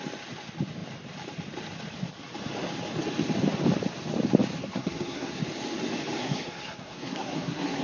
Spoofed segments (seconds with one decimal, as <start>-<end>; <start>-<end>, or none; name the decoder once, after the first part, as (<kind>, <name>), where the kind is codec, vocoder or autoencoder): 4.6-5.4 (codec, SNAC); 6.2-7.8